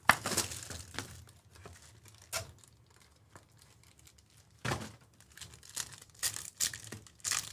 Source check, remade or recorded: recorded